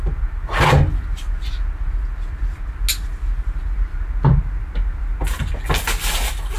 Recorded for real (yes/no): yes